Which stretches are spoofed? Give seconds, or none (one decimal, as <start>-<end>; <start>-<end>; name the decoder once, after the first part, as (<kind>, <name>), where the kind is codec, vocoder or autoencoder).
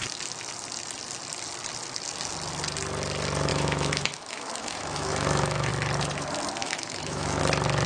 3.5-5.7 (autoencoder, DAC-VAE); 6.6-7.4